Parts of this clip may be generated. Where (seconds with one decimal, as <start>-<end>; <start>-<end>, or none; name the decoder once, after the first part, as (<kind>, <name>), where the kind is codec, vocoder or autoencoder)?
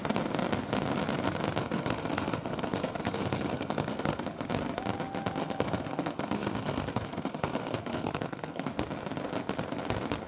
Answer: 1.6-4.2 (codec, SNAC); 5.4-8.7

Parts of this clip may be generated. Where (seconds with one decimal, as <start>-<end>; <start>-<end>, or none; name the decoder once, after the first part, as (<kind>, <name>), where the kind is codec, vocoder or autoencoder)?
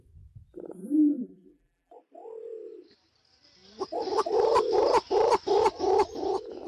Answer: 0.8-1.9 (vocoder, BigVGAN v2)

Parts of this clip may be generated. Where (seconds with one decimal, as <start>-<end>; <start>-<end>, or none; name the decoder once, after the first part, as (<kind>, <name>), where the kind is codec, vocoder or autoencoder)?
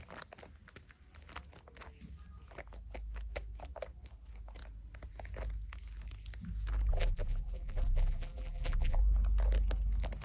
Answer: 6.9-9.0 (vocoder, BigVGAN v2)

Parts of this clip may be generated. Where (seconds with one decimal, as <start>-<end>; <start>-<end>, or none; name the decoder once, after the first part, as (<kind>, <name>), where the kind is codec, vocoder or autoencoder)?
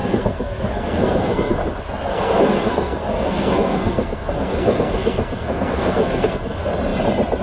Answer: 0.0-1.6 (codec, SNAC); 2.1-6.7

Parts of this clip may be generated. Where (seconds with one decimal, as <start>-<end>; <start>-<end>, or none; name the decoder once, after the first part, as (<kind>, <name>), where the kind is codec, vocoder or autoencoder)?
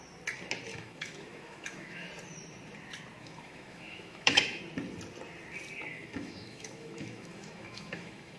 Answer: 0.7-2.1 (autoencoder, DAC-VAE); 3.2-4.6; 5.9-8.4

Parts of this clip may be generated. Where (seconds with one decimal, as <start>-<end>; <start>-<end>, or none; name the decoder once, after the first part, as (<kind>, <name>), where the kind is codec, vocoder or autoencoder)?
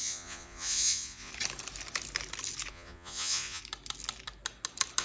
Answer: 0.0-1.3 (vocoder, Vocos); 2.7-3.6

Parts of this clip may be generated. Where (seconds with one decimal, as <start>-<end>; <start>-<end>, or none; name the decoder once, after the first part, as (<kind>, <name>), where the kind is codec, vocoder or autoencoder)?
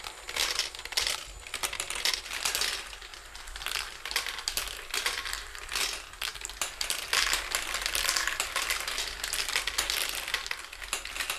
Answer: 3.1-5.8 (vocoder, BigVGAN v2)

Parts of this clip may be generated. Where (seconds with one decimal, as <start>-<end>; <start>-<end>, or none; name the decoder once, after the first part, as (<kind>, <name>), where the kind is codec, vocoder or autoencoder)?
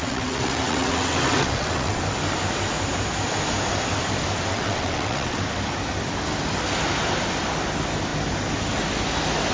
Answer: 0.0-2.0 (vocoder, WaveNeXt); 4.5-5.4